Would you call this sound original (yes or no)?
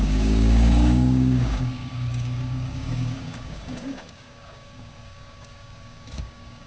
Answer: no